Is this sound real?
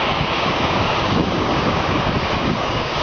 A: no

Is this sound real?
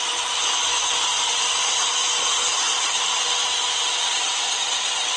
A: yes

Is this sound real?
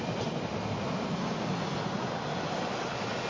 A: yes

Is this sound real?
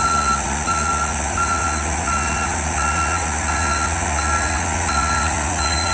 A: no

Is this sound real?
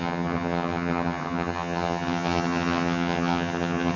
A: no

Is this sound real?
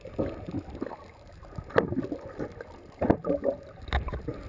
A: yes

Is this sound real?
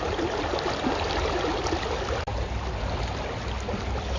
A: yes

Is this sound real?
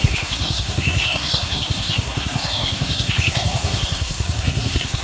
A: no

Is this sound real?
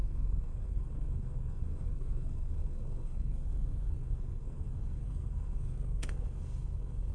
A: no